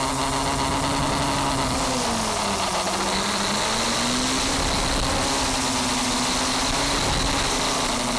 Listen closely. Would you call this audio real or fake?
real